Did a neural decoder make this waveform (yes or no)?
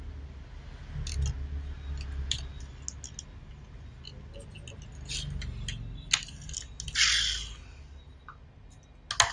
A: no